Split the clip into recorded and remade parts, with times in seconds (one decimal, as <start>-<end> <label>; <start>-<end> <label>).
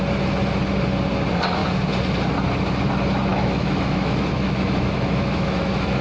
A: 0.0-3.3 recorded; 3.3-6.0 remade